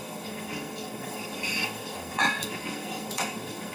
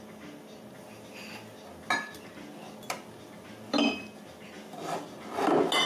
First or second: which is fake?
first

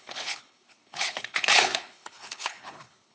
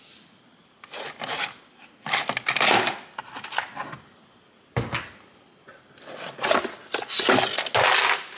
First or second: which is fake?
first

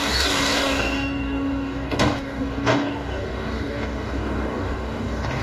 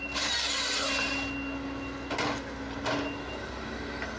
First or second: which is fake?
first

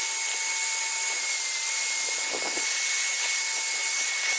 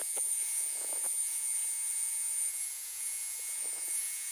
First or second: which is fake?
second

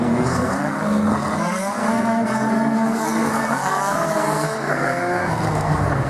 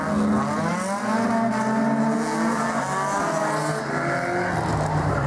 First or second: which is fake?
first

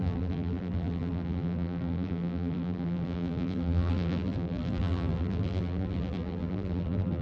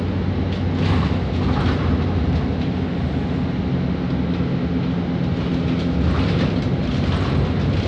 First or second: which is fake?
first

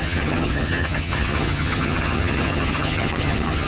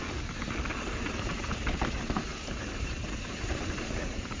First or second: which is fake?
first